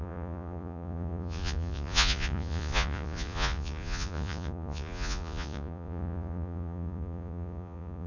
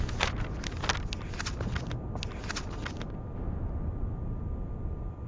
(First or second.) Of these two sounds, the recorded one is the second